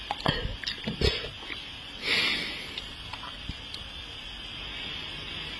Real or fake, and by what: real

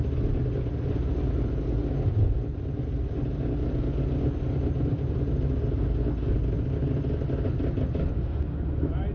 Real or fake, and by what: real